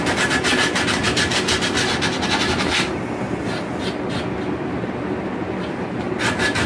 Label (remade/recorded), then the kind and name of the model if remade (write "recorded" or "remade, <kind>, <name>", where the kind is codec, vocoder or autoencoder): recorded